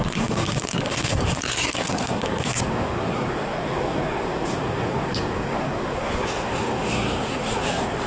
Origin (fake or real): fake